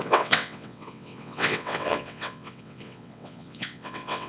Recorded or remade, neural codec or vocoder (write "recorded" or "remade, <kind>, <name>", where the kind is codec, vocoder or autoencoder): remade, vocoder, WaveNeXt